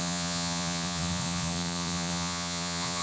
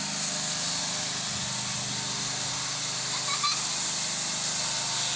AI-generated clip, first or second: first